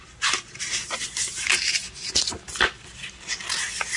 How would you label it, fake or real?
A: real